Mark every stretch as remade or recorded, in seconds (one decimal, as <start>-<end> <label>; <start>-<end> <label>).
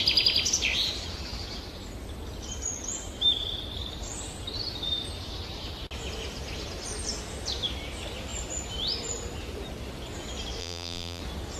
0.0-10.6 recorded; 10.6-11.2 remade; 11.2-11.6 recorded